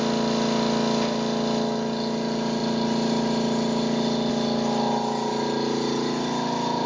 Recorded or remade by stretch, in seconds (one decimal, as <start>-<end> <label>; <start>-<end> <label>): 0.0-6.9 recorded